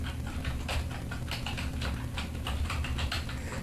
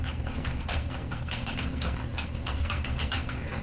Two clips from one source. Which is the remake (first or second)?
second